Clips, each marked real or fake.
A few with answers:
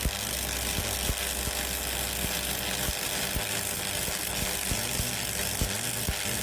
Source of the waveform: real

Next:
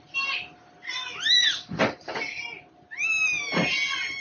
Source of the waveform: real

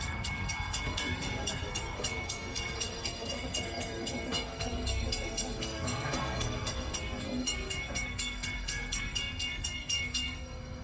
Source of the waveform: fake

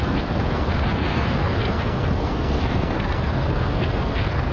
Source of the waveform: fake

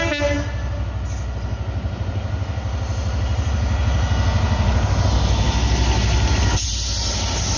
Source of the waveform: real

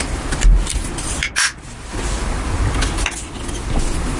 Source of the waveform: real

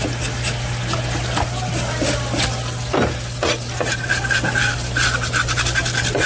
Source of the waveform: real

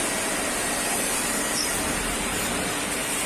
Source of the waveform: real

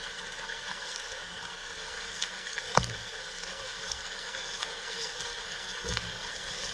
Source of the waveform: fake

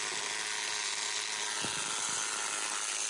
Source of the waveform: real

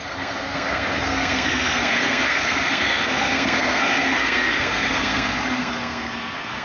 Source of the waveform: fake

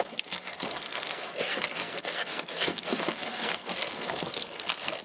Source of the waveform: fake